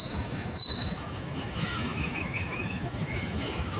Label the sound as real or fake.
fake